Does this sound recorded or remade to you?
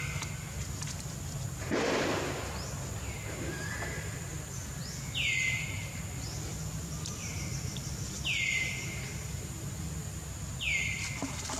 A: recorded